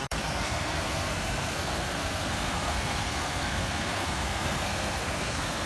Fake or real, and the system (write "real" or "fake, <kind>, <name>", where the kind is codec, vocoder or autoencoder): fake, codec, SNAC